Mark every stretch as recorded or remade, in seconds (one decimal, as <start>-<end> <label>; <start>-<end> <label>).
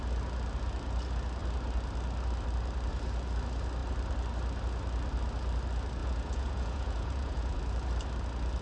0.0-6.0 recorded; 6.0-7.6 remade; 7.6-8.6 recorded